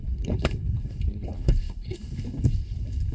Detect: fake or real fake